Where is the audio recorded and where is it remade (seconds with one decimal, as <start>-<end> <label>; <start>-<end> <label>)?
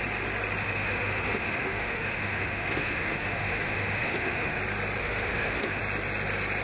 0.0-0.6 recorded; 0.6-4.6 remade; 4.6-5.0 recorded; 5.0-5.8 remade; 5.8-6.6 recorded